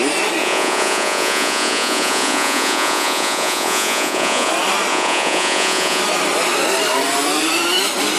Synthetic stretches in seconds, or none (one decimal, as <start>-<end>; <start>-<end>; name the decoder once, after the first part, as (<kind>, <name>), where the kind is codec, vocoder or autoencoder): 0.4-4.5 (vocoder, Vocos); 4.9-6.0

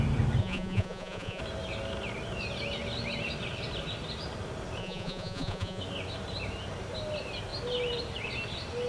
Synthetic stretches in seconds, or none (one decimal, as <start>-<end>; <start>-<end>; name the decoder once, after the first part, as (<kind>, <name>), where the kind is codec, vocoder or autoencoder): 0.4-1.4 (vocoder, Vocos); 4.8-5.8

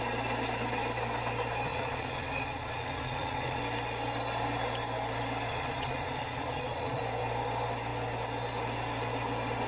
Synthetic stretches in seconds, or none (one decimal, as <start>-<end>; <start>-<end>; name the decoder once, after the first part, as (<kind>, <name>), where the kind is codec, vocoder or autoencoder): 1.7-3.6 (vocoder, Vocos); 5.5-7.0

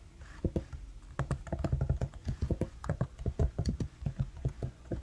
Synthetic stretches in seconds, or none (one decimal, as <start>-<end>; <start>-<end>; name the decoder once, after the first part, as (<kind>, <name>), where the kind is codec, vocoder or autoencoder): 2.0-5.0 (vocoder, Vocos)

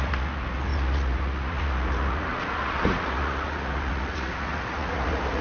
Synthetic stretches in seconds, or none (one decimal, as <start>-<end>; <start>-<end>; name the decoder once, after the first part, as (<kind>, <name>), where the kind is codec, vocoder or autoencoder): 0.0-5.4 (vocoder, Vocos)